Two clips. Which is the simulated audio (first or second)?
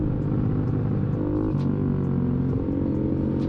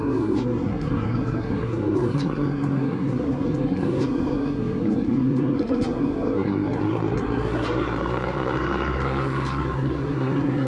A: second